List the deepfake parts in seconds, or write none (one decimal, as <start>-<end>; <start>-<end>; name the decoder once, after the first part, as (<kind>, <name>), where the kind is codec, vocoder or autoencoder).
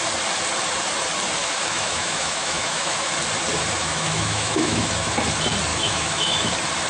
1.4-3.1 (autoencoder, DAC-VAE); 3.8-5.1; 5.7-6.5